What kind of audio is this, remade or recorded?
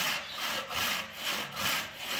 recorded